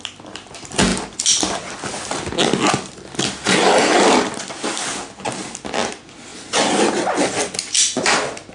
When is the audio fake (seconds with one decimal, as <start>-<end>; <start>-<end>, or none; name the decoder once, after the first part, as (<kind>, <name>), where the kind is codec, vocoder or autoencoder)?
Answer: none